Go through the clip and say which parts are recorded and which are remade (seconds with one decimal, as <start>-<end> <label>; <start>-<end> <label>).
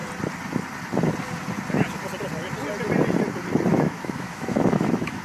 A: 0.0-3.7 recorded; 3.7-5.2 remade